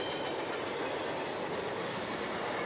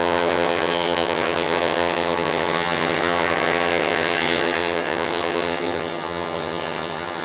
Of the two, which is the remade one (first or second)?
second